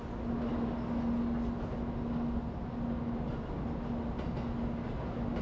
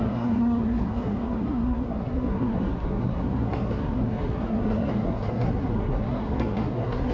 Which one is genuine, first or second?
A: first